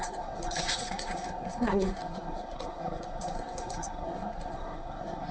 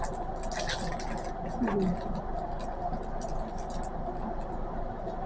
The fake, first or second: first